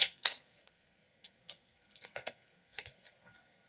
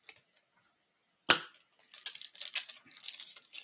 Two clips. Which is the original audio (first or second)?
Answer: second